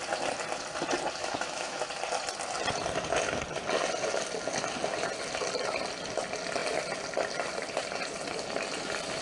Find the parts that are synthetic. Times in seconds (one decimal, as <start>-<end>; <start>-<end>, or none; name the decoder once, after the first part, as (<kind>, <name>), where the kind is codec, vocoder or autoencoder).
1.2-1.8 (autoencoder, DAC-VAE)